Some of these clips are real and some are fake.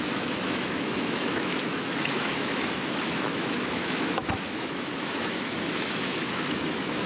fake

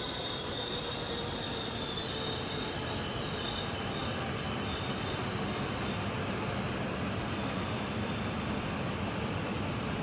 real